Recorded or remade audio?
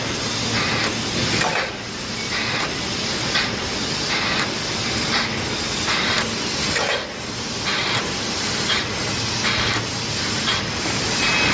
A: recorded